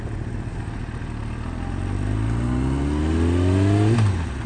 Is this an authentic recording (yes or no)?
yes